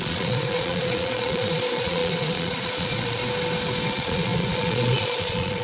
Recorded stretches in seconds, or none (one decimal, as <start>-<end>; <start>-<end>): 3.2-3.9